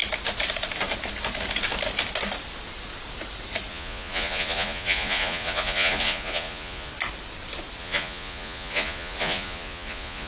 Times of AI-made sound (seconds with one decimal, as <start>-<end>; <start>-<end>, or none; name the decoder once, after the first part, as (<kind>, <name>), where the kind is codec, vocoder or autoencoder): 3.7-6.9 (vocoder, Vocos); 7.8-10.3